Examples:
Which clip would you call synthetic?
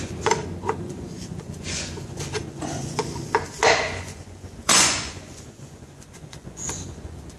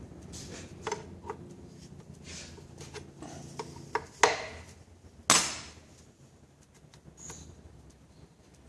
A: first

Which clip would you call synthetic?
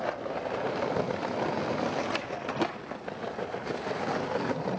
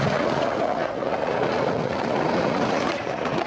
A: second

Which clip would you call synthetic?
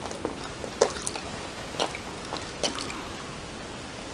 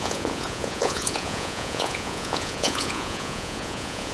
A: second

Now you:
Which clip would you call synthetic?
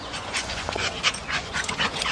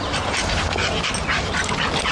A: first